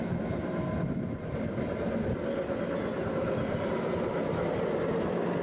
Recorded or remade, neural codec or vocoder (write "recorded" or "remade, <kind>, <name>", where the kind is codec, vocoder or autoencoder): recorded